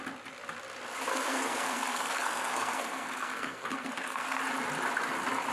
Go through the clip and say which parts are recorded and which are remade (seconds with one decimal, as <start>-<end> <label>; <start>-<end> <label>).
0.0-1.1 recorded; 1.1-4.4 remade; 4.4-5.5 recorded